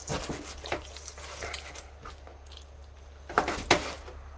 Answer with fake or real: real